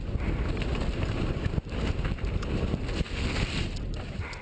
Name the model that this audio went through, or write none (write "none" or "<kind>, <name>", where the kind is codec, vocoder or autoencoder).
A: none